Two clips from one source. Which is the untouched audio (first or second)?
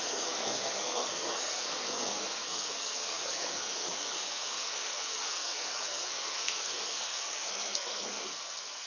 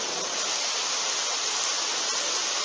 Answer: second